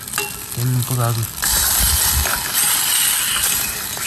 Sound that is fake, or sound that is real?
real